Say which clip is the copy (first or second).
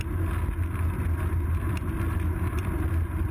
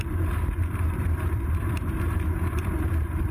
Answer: second